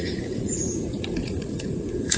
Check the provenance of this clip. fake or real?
fake